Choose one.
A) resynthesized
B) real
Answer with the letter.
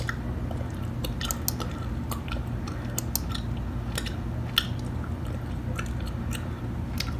B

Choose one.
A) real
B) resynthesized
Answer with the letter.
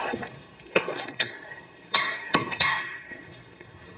B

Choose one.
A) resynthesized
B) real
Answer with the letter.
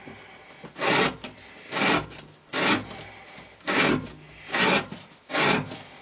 B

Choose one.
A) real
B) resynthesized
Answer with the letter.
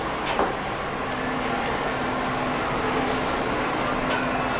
A